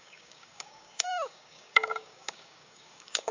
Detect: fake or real fake